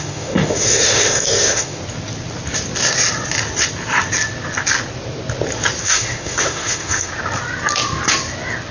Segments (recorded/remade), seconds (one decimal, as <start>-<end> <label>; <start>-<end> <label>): 0.0-1.8 remade; 1.8-5.8 recorded; 5.8-7.1 remade; 7.1-8.7 recorded